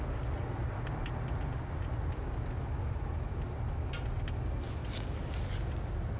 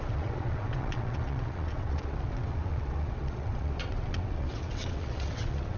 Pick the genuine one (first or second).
first